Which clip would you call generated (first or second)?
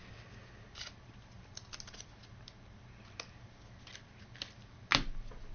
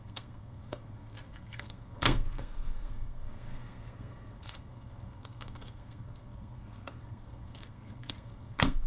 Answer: second